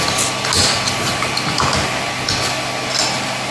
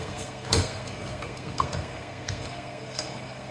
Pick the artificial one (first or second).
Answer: second